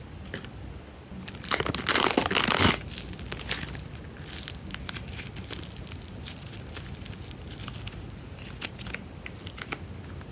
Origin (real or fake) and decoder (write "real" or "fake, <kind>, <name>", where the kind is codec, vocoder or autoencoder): real